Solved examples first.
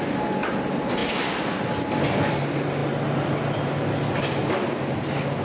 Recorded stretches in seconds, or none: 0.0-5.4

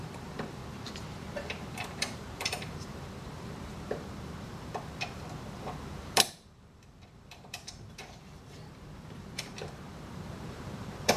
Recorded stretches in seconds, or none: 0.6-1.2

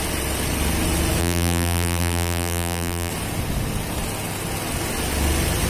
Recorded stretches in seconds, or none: 0.0-1.2; 3.1-5.7

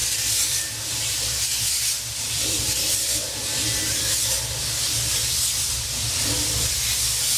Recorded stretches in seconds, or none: 4.3-5.2; 6.7-7.4

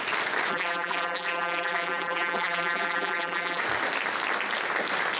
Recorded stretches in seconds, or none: 0.0-0.5; 3.6-5.2

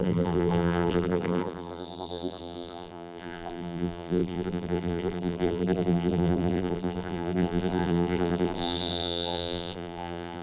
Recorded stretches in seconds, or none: none